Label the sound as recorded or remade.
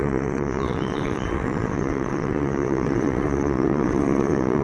remade